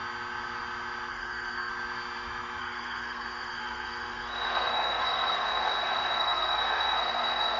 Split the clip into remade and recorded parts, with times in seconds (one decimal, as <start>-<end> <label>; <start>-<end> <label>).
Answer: 0.0-1.1 recorded; 1.1-1.7 remade; 1.7-2.6 recorded; 2.6-7.6 remade